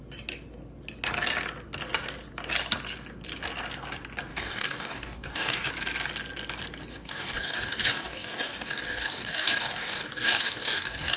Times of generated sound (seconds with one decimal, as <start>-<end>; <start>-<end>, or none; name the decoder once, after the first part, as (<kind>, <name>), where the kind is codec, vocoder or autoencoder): 4.3-5.7 (codec, DAC); 6.9-11.2